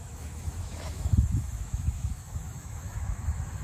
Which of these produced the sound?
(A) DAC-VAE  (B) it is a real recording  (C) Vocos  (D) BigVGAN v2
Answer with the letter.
A